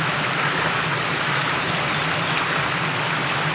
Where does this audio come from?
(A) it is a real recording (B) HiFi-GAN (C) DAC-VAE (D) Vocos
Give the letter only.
A